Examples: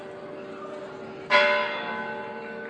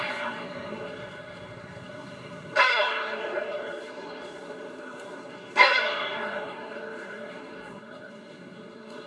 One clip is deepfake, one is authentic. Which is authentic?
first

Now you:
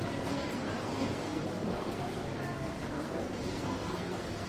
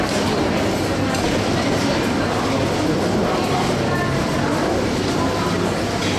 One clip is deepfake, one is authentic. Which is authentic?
second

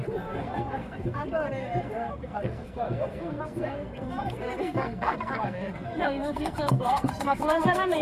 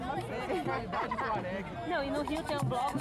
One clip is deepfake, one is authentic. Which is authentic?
second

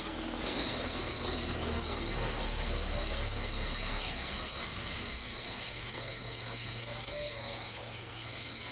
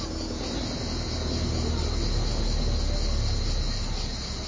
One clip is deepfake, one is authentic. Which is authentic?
second